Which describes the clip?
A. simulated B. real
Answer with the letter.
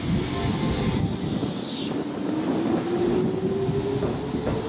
B